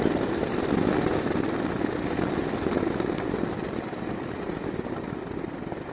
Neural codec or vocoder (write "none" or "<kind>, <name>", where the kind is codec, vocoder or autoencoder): none